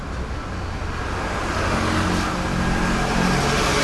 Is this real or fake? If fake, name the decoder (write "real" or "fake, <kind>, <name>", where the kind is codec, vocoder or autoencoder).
real